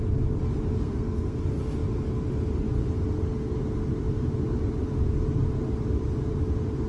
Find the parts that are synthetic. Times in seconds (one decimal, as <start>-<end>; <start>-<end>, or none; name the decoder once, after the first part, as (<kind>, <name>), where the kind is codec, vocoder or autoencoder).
0.8-1.4 (codec, SNAC)